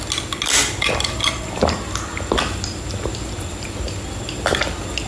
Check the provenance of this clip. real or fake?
real